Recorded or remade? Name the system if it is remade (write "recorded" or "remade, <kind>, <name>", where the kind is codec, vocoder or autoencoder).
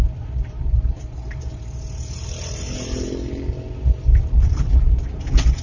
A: recorded